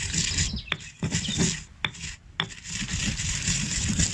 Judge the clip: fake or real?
real